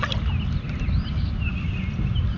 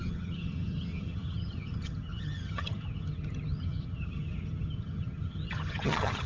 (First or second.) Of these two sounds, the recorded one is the first